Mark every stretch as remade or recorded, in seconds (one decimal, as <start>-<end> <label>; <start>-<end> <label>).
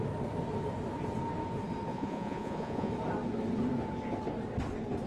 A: 0.0-1.9 recorded; 1.9-2.9 remade; 2.9-5.1 recorded